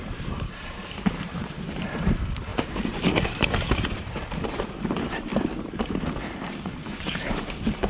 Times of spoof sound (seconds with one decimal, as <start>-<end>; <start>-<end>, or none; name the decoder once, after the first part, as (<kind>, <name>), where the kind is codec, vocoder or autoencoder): 0.0-5.3 (vocoder, BigVGAN v2); 6.6-7.9